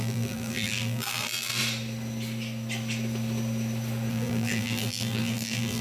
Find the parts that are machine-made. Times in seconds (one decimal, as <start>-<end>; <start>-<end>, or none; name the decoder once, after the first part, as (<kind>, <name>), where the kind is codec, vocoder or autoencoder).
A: 0.0-1.6 (vocoder, BigVGAN v2); 4.1-5.8